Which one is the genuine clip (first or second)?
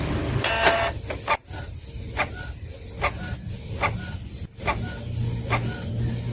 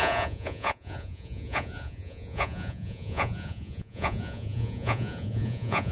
first